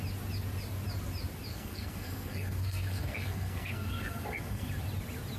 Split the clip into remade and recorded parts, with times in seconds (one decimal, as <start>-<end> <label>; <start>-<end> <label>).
0.0-1.5 recorded; 1.5-4.7 remade; 4.7-5.4 recorded